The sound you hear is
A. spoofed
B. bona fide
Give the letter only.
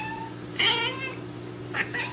B